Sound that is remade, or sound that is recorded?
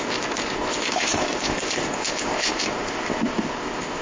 remade